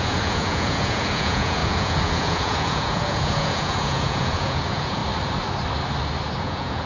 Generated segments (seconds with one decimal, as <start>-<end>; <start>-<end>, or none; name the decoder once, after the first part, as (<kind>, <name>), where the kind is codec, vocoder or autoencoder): 0.0-5.0 (vocoder, Vocos); 6.4-6.9